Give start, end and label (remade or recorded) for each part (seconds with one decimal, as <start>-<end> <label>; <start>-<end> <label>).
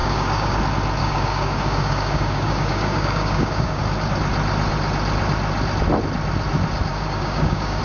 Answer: 0.0-0.6 remade; 0.6-1.0 recorded; 1.0-3.8 remade; 3.8-6.9 recorded; 6.9-7.8 remade